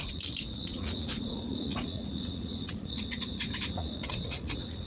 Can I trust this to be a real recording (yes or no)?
no